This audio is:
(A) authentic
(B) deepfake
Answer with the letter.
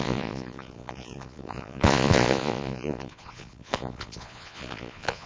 B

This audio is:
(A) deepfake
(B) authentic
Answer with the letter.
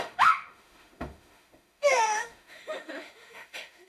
A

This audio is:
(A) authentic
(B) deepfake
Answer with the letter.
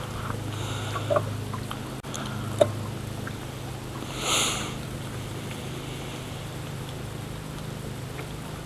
A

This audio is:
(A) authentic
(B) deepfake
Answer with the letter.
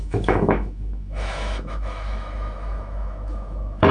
B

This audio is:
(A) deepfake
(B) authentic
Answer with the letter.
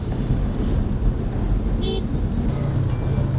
B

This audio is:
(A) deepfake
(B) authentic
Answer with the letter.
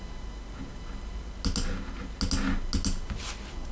B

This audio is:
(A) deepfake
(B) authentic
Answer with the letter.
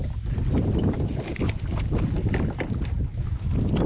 B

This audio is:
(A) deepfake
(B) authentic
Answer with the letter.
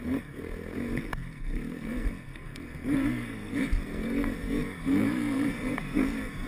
A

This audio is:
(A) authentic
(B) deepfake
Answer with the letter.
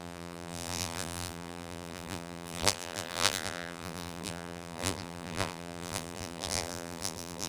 B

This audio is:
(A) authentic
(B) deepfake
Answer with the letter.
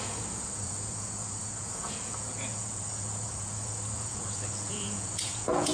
B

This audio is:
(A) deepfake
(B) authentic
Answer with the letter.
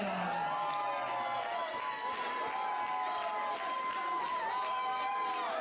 B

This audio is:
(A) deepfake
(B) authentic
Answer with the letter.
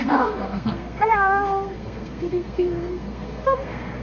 A